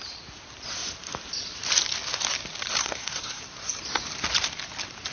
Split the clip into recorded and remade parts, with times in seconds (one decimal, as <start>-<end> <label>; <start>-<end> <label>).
0.0-2.8 recorded; 2.8-3.4 remade; 3.4-5.1 recorded